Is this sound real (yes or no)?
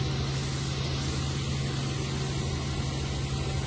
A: yes